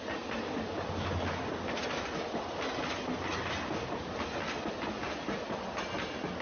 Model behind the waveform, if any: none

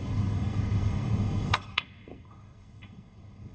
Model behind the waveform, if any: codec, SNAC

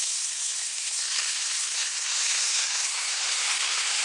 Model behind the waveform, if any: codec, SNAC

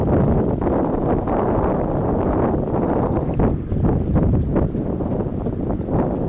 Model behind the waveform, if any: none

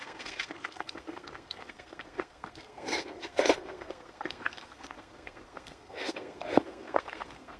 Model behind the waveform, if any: codec, SNAC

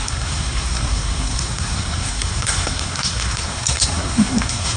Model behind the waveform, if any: codec, SNAC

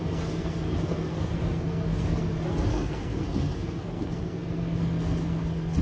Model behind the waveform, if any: codec, SNAC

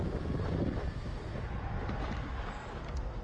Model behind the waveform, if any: none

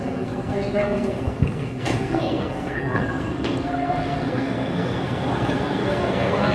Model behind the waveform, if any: codec, SNAC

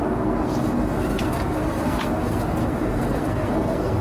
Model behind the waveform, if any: codec, SNAC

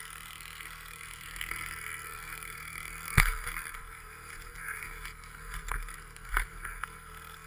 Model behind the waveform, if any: codec, SNAC